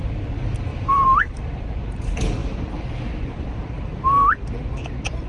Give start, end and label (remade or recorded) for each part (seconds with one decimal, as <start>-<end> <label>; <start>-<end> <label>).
0.0-0.7 recorded; 0.7-2.0 remade; 2.0-5.3 recorded